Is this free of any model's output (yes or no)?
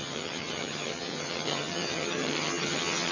no